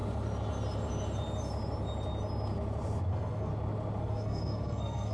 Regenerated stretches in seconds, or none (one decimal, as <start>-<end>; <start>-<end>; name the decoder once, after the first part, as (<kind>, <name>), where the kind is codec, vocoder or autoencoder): 3.1-3.5 (codec, SNAC); 4.0-5.1